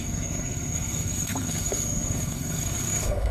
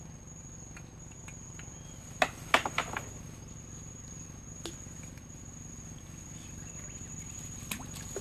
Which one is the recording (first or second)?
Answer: second